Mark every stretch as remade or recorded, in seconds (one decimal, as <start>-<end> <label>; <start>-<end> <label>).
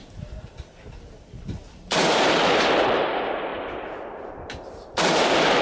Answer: 0.0-1.9 recorded; 1.9-5.6 remade